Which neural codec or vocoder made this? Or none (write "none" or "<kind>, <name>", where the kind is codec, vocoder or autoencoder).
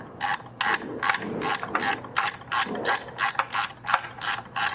none